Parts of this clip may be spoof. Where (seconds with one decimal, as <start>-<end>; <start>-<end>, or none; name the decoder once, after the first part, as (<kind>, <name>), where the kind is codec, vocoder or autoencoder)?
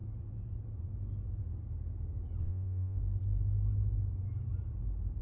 2.4-3.0 (vocoder, Vocos)